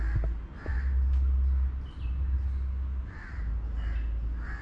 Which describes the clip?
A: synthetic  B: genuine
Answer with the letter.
B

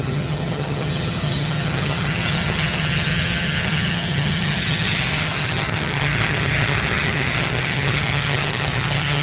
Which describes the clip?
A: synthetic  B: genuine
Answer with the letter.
A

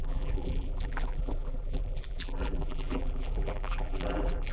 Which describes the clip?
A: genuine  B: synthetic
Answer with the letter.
B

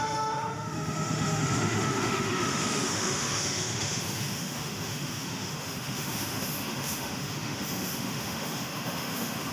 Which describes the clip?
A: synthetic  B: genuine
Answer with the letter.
A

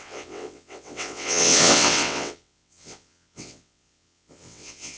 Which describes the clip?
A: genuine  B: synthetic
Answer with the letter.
B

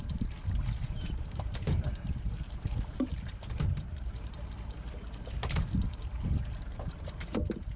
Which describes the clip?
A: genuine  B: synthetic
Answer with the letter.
B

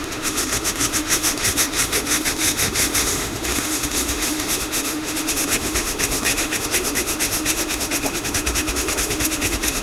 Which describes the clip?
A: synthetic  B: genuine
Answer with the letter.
A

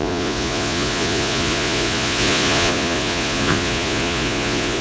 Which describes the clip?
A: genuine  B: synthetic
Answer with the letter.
B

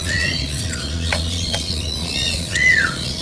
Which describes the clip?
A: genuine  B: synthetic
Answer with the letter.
B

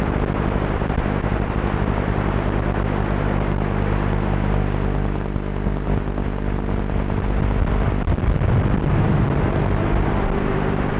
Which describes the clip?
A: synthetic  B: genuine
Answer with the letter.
B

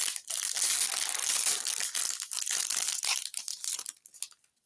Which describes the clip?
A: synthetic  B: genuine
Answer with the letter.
B